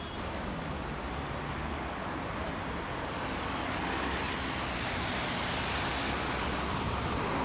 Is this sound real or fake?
real